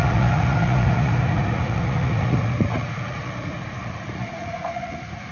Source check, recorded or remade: remade